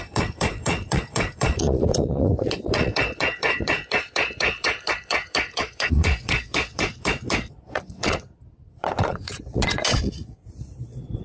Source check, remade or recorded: remade